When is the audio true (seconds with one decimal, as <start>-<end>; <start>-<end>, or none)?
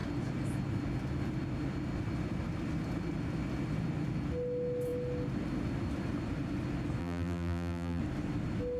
0.0-7.0; 8.0-8.8